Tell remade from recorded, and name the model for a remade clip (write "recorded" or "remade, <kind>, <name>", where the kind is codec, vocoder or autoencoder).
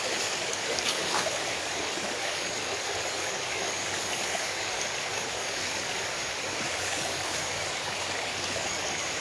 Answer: remade, codec, DAC